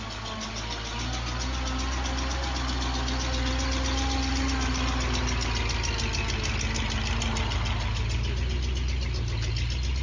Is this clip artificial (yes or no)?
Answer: no